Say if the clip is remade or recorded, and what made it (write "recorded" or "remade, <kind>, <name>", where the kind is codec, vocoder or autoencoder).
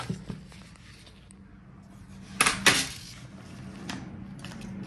recorded